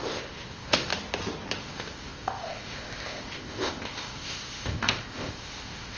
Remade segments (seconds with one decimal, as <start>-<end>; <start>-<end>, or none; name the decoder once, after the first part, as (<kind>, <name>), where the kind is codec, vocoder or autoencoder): 0.0-0.9 (codec, ZipCodec); 1.6-6.0